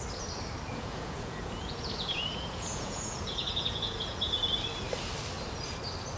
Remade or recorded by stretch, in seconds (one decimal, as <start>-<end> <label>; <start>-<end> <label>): 0.0-0.7 recorded; 0.7-4.4 remade; 4.4-6.2 recorded